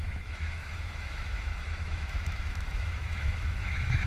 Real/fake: fake